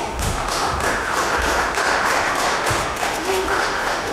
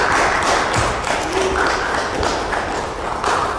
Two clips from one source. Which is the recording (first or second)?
second